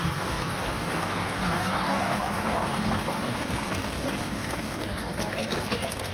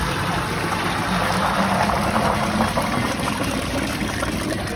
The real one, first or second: second